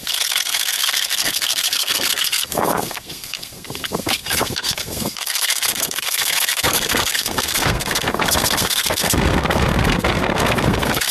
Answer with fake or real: fake